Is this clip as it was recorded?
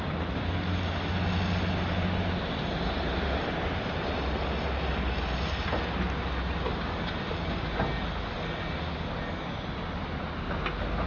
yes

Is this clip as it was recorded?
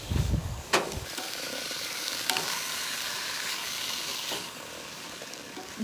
no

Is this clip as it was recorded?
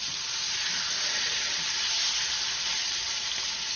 yes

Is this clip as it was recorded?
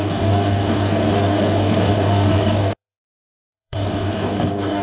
no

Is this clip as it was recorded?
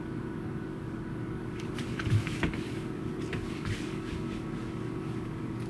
no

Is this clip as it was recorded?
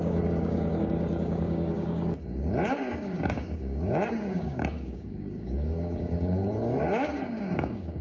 no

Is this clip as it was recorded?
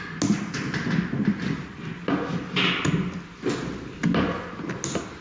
yes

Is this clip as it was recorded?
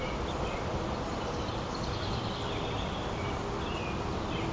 yes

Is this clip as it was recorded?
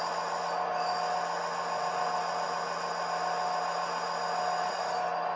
yes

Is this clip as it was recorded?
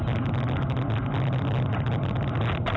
yes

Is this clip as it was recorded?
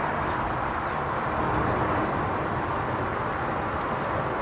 yes